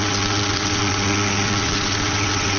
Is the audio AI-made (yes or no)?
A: yes